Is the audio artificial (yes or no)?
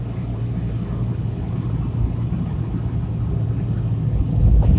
no